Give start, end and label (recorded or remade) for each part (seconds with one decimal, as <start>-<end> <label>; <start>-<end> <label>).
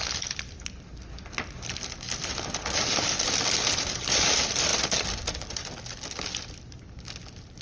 0.0-7.6 recorded